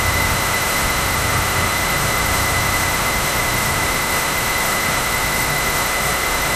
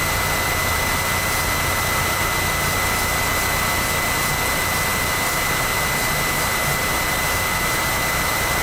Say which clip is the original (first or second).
second